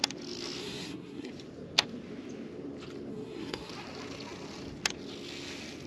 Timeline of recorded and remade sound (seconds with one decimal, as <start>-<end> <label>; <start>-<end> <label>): 0.0-0.6 recorded; 0.6-1.3 remade; 1.3-3.1 recorded; 3.1-3.7 remade; 3.7-5.9 recorded